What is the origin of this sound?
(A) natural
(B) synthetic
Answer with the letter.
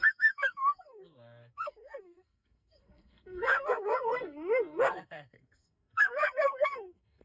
B